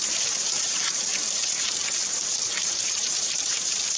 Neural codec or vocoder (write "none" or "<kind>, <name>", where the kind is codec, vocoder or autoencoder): vocoder, BigVGAN v2